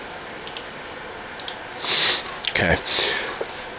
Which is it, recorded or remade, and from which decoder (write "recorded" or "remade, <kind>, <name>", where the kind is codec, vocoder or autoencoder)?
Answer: recorded